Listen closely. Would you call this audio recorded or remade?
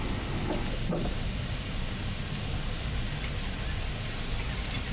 recorded